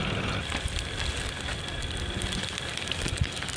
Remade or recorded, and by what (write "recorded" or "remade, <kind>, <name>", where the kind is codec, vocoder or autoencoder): recorded